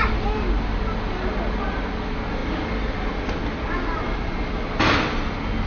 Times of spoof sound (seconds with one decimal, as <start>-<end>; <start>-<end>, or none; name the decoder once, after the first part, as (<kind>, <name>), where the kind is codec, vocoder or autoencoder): none